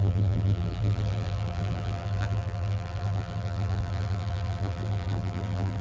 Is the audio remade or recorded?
remade